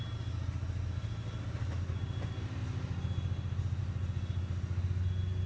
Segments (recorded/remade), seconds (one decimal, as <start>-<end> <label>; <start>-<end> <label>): 0.0-5.5 recorded